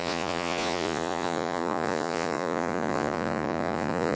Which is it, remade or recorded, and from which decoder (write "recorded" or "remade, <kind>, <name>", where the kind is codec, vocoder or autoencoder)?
remade, vocoder, Vocos